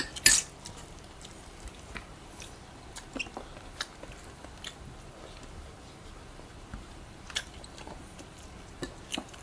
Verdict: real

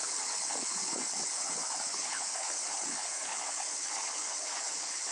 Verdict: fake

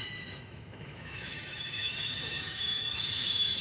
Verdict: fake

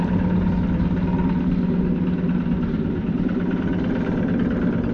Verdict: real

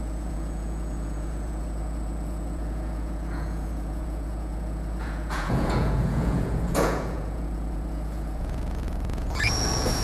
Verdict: fake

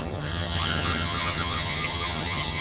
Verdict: fake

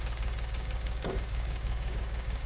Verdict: fake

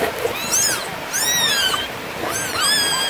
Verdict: real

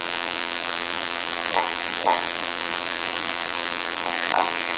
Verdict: fake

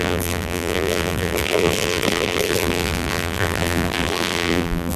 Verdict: fake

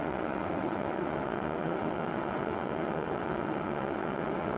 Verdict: fake